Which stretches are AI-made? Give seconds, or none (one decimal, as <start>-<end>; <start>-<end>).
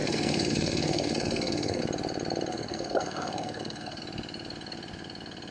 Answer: 0.0-1.8; 2.5-4.0